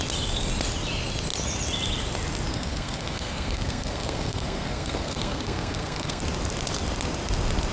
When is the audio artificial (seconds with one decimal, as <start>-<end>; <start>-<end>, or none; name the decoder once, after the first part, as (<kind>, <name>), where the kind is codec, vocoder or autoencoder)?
2.5-6.2 (codec, SNAC)